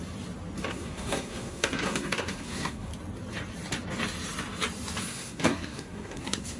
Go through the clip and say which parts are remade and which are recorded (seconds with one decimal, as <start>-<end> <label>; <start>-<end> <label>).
0.0-0.7 recorded; 0.7-2.9 remade; 2.9-5.0 recorded; 5.0-6.6 remade